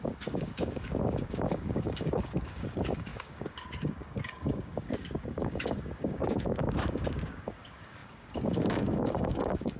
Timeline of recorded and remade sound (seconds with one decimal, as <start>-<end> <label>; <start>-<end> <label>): 0.0-9.8 remade